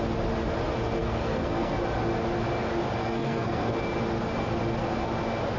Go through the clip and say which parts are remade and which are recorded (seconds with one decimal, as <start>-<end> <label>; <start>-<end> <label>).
0.0-1.0 recorded; 1.0-1.8 remade; 1.8-3.0 recorded; 3.0-3.7 remade; 3.7-5.6 recorded